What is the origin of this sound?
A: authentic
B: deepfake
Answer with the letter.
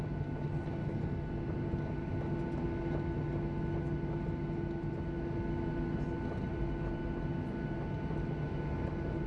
A